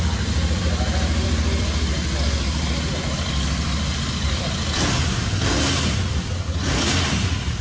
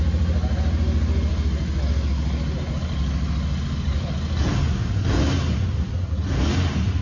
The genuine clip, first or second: second